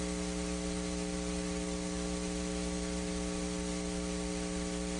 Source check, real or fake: fake